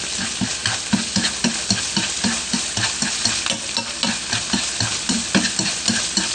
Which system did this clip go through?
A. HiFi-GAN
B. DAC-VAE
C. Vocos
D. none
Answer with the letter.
D